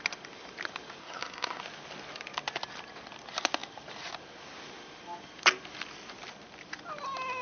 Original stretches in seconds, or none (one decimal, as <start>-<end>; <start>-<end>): 0.0-1.0; 1.6-7.4